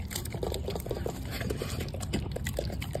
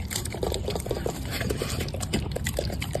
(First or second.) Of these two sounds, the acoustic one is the first